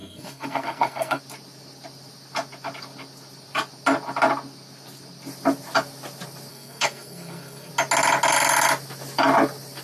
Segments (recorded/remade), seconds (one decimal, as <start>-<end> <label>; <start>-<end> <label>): 0.0-1.2 remade; 1.2-6.5 recorded; 6.5-7.7 remade; 7.7-9.8 recorded